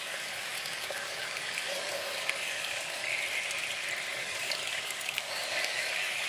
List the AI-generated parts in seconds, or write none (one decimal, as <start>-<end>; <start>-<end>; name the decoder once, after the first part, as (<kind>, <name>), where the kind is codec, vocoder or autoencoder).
0.0-3.1 (codec, DAC); 4.1-6.3